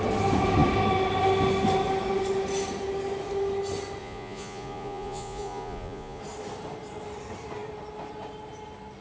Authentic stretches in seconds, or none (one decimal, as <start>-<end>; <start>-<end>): 0.0-4.0; 6.2-9.0